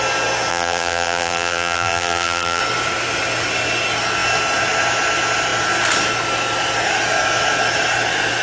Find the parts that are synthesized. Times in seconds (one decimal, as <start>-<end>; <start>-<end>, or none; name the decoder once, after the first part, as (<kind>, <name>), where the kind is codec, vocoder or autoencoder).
0.5-2.6 (vocoder, BigVGAN v2)